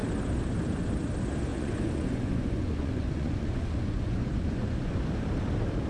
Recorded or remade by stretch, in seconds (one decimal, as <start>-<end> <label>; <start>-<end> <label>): 0.0-1.5 recorded; 1.5-5.0 remade; 5.0-5.9 recorded